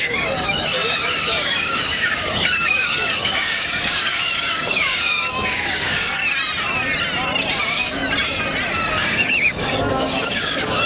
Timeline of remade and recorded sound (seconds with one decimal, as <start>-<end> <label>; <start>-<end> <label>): 0.0-6.2 remade; 6.2-7.6 recorded; 7.6-8.0 remade; 8.0-8.9 recorded; 8.9-10.9 remade

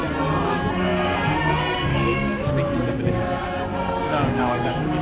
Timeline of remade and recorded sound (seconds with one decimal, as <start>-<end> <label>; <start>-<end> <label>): 0.0-1.9 recorded; 1.9-2.5 remade; 2.5-3.7 recorded; 3.7-5.0 remade

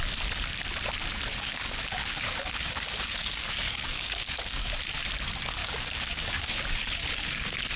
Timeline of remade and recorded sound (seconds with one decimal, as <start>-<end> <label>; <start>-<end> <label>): 0.0-1.3 recorded; 1.3-4.8 remade; 4.8-5.6 recorded; 5.6-7.8 remade

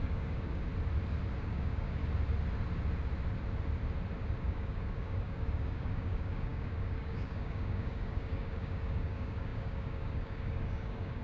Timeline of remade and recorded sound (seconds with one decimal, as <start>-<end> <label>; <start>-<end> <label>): 0.0-0.7 remade; 0.7-1.4 recorded; 1.4-2.0 remade; 2.0-4.4 recorded; 4.4-11.2 remade

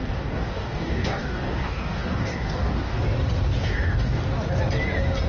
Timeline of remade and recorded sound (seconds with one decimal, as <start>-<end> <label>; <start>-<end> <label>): 0.0-3.0 remade; 3.0-3.6 recorded; 3.6-4.2 remade; 4.2-5.3 recorded

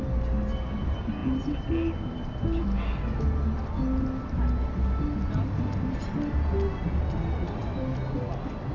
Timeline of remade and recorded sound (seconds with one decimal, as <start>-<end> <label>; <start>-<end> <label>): 0.0-8.7 recorded

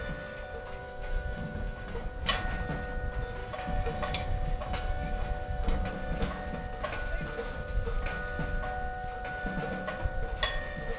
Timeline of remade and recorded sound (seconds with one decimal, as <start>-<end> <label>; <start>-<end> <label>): 0.0-0.8 recorded; 0.8-2.1 remade; 2.1-3.4 recorded; 3.4-5.9 remade; 5.9-11.0 recorded

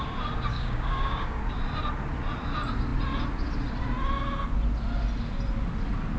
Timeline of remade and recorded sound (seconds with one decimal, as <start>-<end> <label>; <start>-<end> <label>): 0.0-0.5 recorded; 0.5-1.4 remade; 1.4-6.2 recorded